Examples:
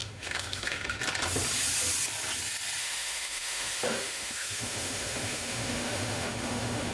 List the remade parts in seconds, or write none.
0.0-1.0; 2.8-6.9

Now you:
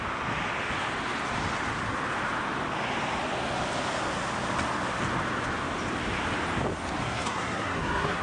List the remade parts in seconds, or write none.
7.0-8.2

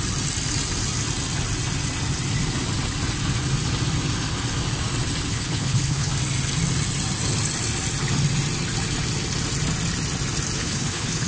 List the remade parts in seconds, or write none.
5.3-6.1; 10.6-11.3

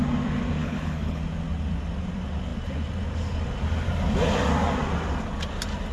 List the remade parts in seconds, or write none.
0.6-1.2

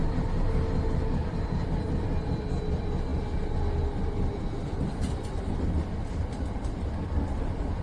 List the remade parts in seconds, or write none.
none